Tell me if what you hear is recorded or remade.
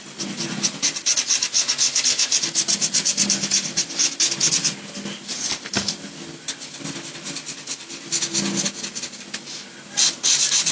recorded